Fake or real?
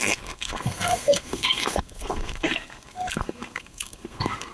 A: fake